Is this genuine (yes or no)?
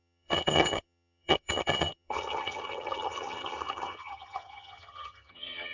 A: no